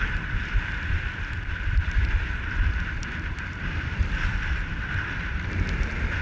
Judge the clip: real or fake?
fake